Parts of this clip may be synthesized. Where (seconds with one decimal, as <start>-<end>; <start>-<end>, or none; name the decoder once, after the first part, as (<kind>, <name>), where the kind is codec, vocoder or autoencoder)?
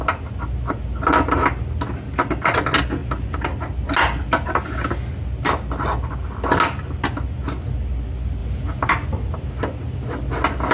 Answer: none